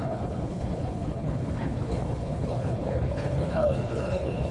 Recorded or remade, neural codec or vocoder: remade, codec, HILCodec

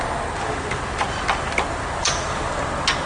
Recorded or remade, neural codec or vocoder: recorded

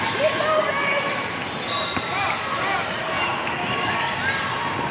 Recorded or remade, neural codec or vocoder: recorded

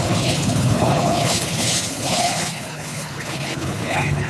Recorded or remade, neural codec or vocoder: remade, codec, HILCodec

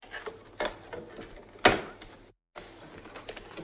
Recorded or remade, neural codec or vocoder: recorded